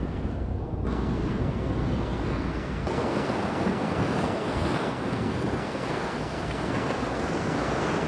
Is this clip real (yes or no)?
no